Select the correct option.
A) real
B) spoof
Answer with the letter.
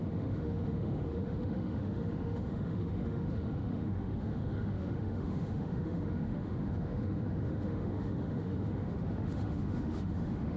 B